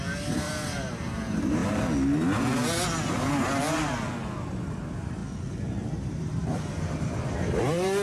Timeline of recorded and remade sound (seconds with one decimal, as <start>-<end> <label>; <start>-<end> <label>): 0.0-1.6 remade; 1.6-4.2 recorded; 4.2-5.2 remade; 5.2-5.9 recorded; 5.9-8.0 remade